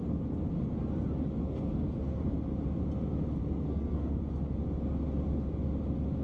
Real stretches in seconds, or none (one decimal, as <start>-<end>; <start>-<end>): 0.0-1.4; 2.3-3.4; 4.2-6.2